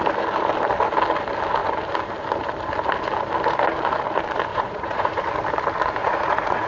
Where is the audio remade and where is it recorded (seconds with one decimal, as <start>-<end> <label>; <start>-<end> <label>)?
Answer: 0.0-4.5 recorded; 4.5-5.2 remade; 5.2-6.0 recorded; 6.0-6.7 remade